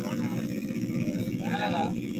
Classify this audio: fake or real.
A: fake